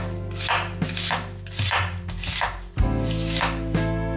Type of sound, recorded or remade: recorded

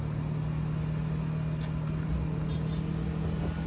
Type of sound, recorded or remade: recorded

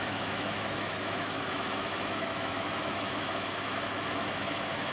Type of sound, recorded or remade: remade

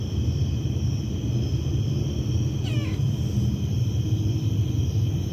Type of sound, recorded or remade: recorded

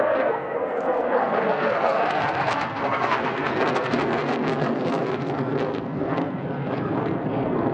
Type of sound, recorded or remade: remade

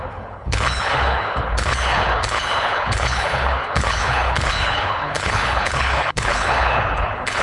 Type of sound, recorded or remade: remade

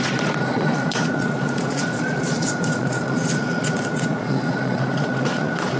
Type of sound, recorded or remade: remade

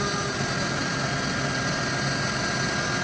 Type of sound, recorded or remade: recorded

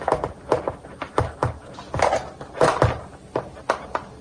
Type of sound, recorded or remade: recorded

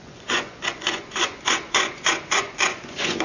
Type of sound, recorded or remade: remade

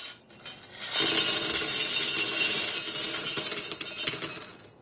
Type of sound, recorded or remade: recorded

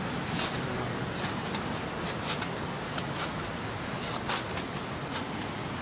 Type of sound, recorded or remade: recorded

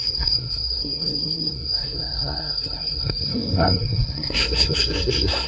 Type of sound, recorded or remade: remade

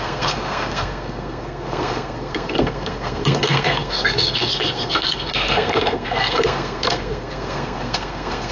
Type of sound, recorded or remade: remade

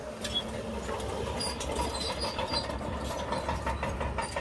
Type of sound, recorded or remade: recorded